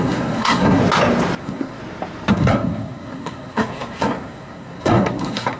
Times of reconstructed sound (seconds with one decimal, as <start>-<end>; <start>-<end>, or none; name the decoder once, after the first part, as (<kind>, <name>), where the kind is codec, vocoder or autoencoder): 0.0-0.8 (codec, SNAC); 1.4-1.8; 2.3-5.6